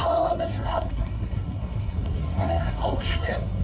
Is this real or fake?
fake